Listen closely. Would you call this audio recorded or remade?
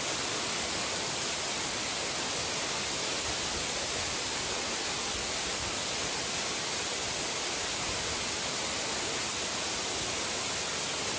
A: recorded